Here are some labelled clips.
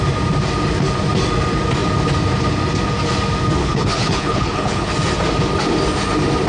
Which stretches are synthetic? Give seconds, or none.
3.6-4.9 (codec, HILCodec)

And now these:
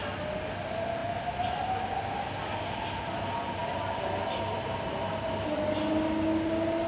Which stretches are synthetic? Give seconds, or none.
none